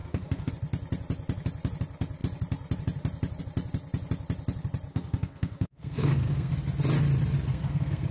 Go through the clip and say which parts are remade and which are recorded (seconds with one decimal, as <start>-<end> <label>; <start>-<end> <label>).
0.0-0.5 remade; 0.5-4.9 recorded; 4.9-6.5 remade; 6.5-7.5 recorded; 7.5-8.1 remade